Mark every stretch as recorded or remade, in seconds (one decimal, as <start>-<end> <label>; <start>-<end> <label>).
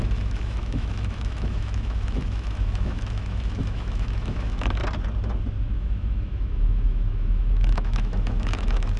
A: 0.0-4.8 remade; 4.8-5.6 recorded; 5.6-9.0 remade